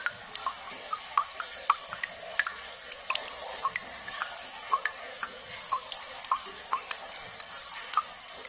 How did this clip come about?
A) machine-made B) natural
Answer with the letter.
B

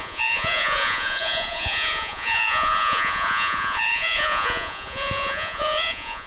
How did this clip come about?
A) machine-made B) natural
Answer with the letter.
A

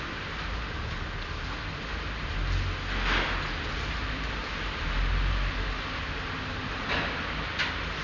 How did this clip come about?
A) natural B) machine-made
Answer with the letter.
A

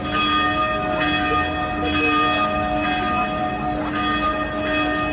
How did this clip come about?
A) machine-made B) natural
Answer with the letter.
B